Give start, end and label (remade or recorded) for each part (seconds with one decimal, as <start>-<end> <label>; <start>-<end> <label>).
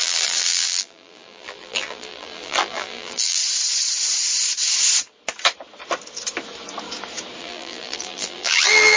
0.0-3.4 remade; 3.4-7.4 recorded; 7.4-9.0 remade